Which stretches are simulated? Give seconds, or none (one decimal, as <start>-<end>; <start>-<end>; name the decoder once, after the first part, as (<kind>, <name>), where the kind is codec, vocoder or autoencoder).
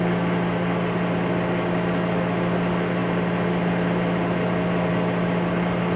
none